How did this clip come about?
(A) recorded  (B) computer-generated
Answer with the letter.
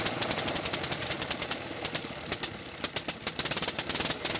A